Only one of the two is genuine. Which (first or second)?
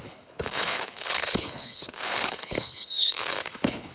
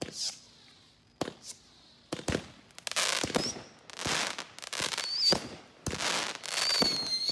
second